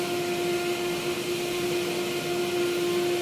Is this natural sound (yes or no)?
yes